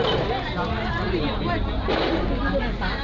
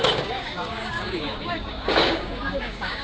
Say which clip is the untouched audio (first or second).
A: first